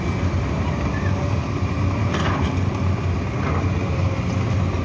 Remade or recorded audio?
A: recorded